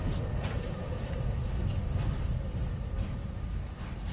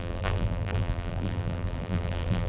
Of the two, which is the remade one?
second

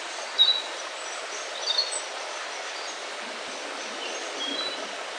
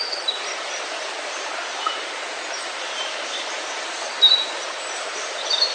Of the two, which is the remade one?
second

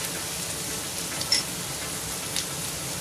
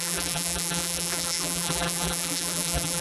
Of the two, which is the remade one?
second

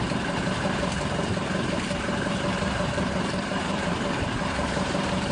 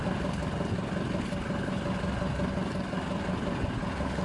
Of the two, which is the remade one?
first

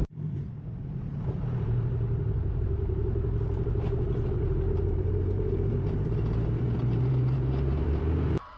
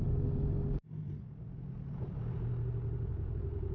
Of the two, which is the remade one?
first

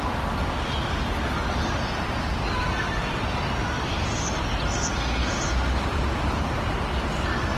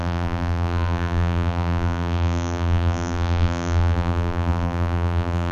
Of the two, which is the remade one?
second